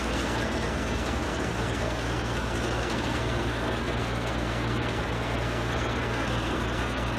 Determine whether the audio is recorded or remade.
remade